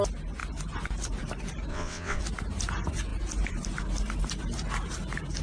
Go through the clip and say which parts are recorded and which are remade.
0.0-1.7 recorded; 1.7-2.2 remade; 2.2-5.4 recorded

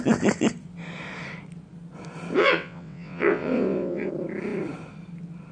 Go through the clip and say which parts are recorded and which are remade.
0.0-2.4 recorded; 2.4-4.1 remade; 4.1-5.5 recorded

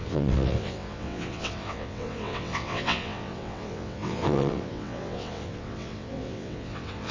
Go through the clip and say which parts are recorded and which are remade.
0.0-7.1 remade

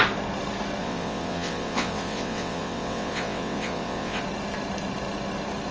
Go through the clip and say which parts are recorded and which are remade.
0.0-0.8 recorded; 0.8-4.2 remade; 4.2-5.7 recorded